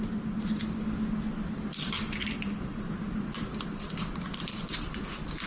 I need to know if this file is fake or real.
real